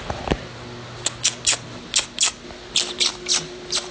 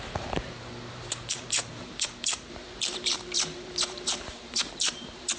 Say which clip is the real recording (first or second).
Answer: first